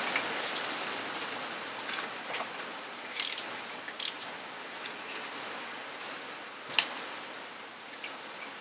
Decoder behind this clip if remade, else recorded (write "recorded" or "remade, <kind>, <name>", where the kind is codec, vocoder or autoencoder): recorded